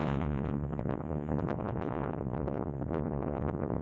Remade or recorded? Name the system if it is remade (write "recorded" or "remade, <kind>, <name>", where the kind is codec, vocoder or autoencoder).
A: remade, vocoder, Vocos